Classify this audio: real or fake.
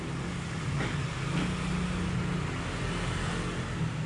real